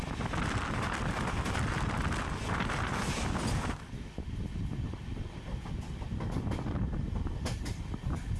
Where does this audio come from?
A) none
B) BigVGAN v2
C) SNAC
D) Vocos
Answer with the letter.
A